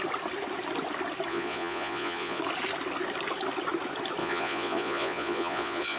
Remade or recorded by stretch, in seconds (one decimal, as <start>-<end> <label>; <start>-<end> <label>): 0.0-1.3 recorded; 1.3-2.4 remade; 2.4-4.2 recorded; 4.2-6.0 remade